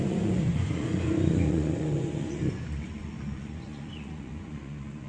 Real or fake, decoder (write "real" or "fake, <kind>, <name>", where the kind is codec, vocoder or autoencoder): fake, vocoder, Vocos